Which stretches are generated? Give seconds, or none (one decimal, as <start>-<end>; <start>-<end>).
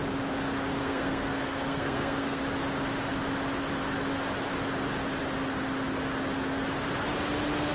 0.8-2.4